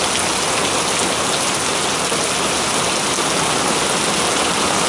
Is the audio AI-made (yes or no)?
no